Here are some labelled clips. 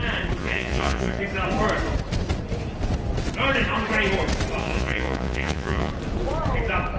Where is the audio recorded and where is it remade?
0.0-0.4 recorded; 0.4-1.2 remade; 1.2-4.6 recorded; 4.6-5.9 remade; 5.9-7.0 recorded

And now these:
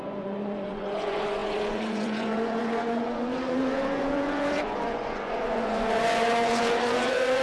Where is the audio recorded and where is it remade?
0.0-7.4 remade

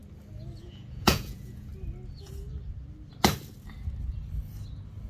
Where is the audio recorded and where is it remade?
0.0-0.6 recorded; 0.6-1.7 remade; 1.7-5.1 recorded

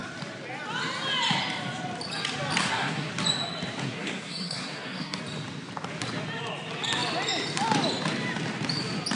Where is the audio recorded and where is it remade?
0.0-2.6 recorded; 2.6-3.1 remade; 3.1-3.8 recorded; 3.8-5.2 remade; 5.2-9.1 recorded